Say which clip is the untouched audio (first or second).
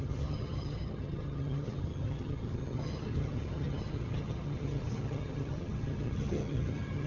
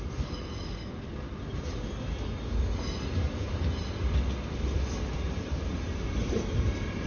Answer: second